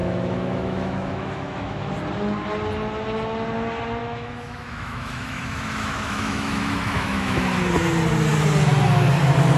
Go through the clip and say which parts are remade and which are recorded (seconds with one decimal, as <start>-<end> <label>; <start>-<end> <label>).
0.0-1.9 remade; 1.9-4.0 recorded; 4.0-7.4 remade; 7.4-9.6 recorded